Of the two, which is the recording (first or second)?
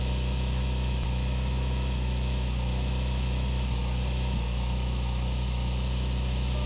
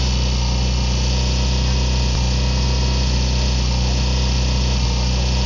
second